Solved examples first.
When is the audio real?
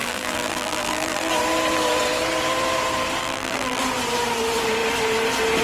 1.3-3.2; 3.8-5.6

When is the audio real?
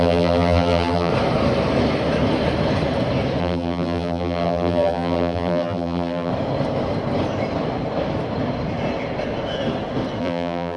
1.1-3.4; 6.3-10.2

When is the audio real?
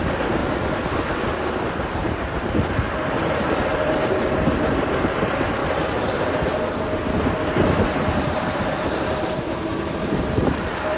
0.4-1.1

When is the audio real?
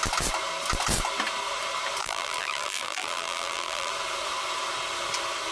0.0-2.0; 3.9-5.5